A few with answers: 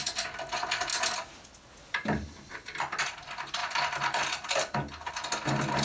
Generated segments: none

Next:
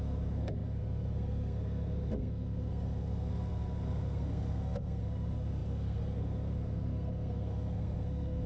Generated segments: 0.0-8.5

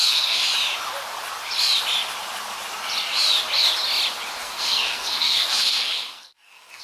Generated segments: 0.0-0.4; 4.4-6.8

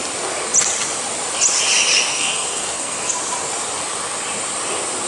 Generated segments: 2.1-3.1

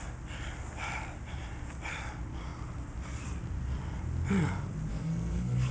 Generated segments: 4.9-5.7

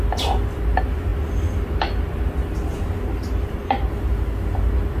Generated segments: none